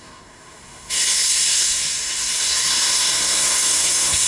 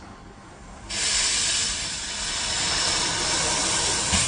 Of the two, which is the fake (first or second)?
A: first